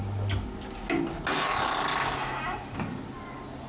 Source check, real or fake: real